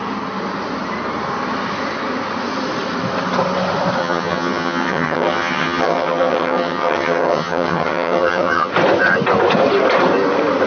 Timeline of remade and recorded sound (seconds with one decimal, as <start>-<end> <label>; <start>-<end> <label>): 0.0-4.0 recorded; 4.0-8.7 remade; 8.7-10.7 recorded